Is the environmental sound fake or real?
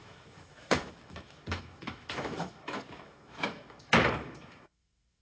fake